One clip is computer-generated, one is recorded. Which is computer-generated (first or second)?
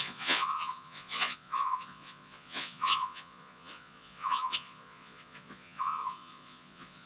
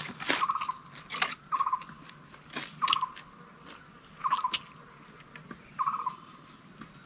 first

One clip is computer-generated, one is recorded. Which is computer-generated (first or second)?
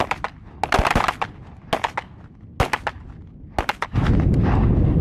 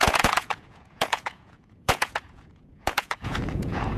second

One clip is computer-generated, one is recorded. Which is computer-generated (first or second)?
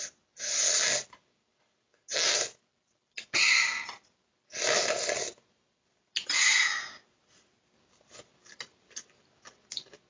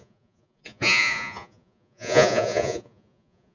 second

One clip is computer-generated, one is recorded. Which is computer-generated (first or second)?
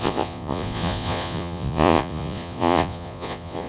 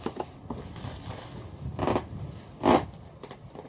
first